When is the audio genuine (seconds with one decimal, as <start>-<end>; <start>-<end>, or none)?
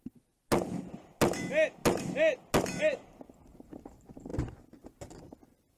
0.0-5.8